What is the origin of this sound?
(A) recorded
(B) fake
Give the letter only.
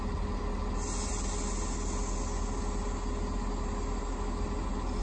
A